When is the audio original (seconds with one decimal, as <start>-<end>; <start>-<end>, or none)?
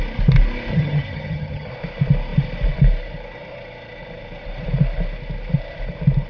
0.0-0.7; 1.7-6.3